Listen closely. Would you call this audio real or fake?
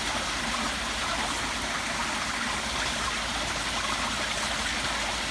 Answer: real